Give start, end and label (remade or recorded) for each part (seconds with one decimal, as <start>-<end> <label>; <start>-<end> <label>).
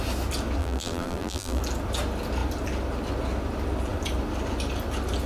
0.0-0.6 recorded; 0.6-1.6 remade; 1.6-5.3 recorded